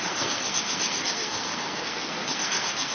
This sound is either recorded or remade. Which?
remade